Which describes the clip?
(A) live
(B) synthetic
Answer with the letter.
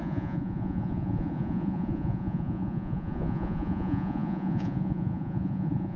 B